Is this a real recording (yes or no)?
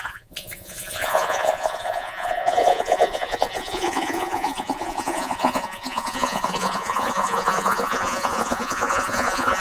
no